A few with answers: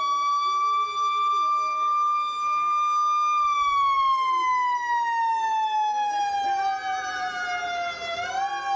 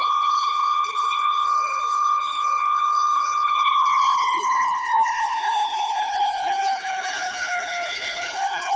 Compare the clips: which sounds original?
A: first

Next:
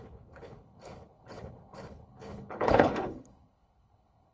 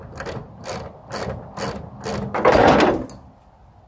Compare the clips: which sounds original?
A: second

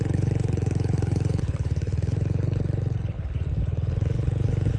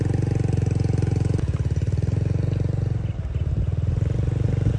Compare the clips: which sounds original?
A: second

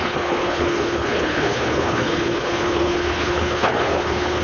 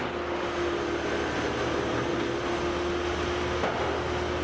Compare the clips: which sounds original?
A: second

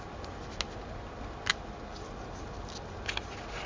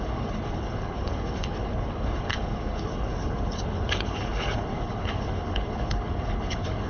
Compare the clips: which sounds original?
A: first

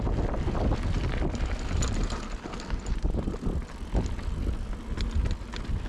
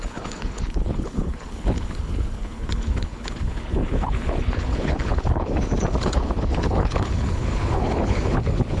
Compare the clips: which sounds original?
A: first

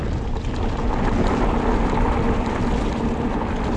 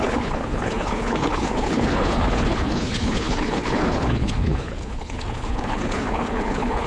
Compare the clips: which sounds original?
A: first